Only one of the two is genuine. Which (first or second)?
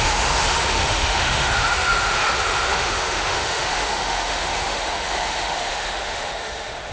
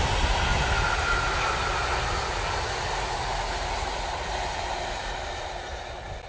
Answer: second